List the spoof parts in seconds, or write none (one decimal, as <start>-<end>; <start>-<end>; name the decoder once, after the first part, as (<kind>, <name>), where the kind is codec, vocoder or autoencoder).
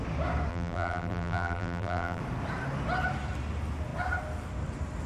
0.5-2.2 (vocoder, BigVGAN v2)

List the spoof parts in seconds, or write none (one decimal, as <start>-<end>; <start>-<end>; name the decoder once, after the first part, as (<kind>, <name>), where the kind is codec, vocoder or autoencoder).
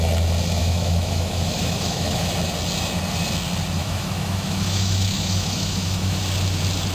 0.6-2.3 (autoencoder, DAC-VAE); 3.8-6.2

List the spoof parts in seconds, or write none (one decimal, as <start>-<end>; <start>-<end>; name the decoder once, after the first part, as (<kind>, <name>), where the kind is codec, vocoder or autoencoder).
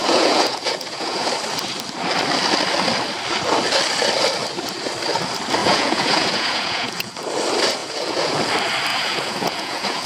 0.0-1.3 (vocoder, Vocos); 5.6-7.1; 7.8-8.4; 8.9-10.1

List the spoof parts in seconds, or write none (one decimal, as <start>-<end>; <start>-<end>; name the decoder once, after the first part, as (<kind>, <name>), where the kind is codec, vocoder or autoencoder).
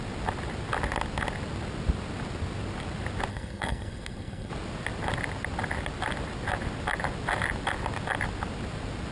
3.3-4.5 (codec, SNAC)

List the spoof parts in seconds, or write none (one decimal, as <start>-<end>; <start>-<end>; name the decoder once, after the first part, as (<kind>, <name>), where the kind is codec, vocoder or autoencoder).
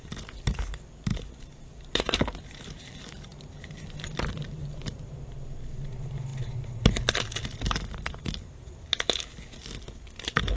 1.1-5.6 (vocoder, BigVGAN v2)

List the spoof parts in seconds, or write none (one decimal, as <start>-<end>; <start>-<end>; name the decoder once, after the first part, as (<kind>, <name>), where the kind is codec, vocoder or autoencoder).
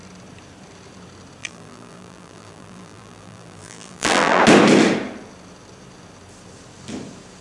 1.4-4.4 (vocoder, BigVGAN v2)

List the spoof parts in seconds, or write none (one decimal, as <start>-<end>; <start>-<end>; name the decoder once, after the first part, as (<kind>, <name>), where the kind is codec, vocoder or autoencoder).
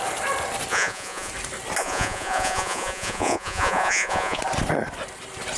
0.7-1.3 (vocoder, Vocos); 1.8-4.4